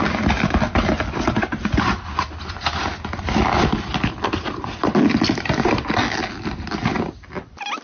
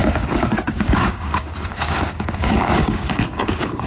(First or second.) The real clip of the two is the first